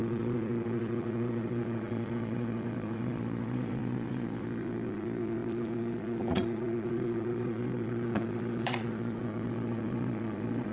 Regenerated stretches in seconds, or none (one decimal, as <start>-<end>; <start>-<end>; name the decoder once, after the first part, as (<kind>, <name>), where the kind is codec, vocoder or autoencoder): 0.0-10.7 (vocoder, Vocos)